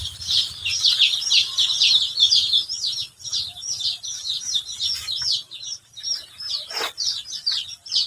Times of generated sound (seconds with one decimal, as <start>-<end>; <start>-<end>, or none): 0.0-0.6; 1.3-8.1